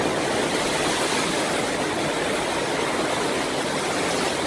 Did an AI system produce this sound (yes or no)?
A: no